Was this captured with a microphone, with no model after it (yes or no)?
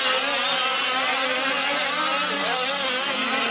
yes